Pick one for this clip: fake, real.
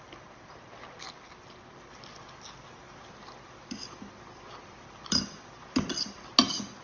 real